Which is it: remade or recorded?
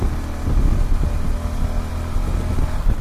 recorded